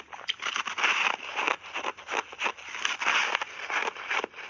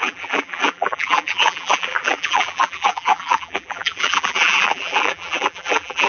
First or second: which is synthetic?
second